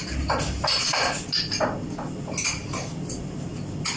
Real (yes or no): yes